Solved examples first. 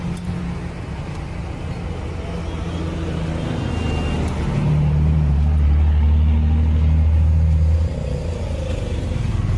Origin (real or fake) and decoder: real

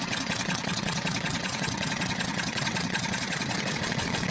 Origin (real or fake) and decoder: fake, vocoder, WaveNeXt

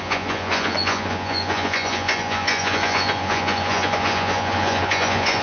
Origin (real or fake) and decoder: fake, vocoder, Vocos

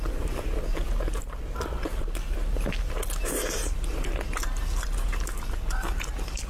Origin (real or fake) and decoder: real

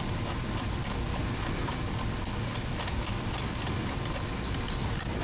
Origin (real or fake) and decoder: real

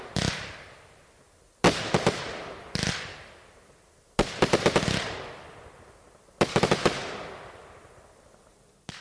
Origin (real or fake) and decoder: real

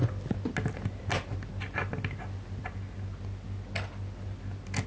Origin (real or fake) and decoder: real